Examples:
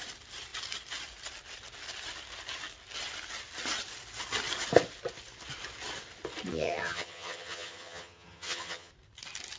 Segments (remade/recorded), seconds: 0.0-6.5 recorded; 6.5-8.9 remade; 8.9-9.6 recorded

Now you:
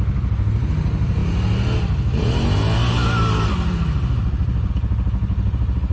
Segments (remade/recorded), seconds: 0.0-5.9 recorded

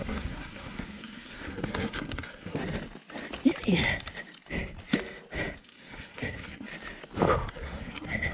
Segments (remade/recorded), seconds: 0.0-2.6 remade; 2.6-5.6 recorded; 5.6-6.7 remade; 6.7-7.5 recorded; 7.5-8.3 remade

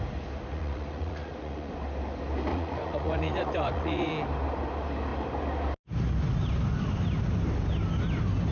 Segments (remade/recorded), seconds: 0.0-0.5 recorded; 0.5-1.7 remade; 1.7-2.5 recorded; 2.5-4.1 remade; 4.1-8.5 recorded